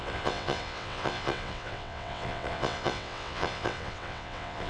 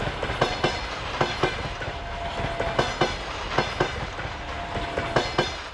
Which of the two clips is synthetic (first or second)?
first